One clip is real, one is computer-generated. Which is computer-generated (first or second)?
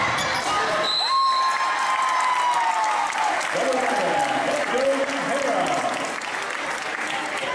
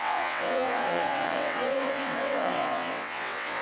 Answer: second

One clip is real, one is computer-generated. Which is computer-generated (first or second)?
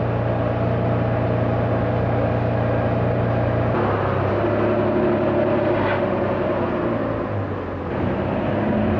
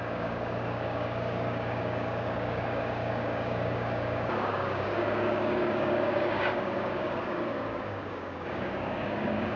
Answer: second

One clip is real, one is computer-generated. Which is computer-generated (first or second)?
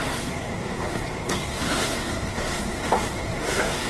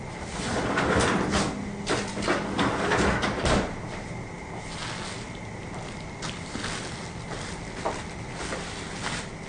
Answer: first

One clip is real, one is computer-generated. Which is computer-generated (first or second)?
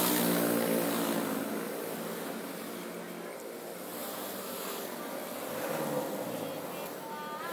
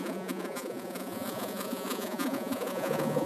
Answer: second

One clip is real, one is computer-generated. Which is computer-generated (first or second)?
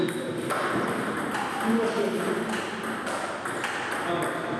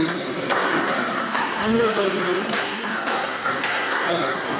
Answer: second